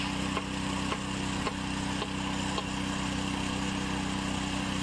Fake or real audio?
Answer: real